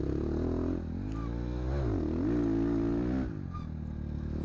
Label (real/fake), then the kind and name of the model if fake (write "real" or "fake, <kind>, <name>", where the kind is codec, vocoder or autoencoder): real